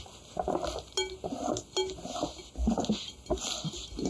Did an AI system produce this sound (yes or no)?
no